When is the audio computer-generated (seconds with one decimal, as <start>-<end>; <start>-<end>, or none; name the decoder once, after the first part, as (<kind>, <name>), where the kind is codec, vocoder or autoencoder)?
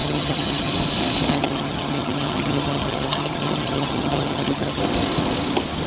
0.0-0.7 (vocoder, HiFi-GAN); 1.3-4.8